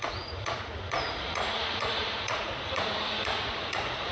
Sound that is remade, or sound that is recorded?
remade